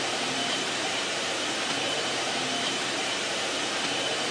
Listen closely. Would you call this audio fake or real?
fake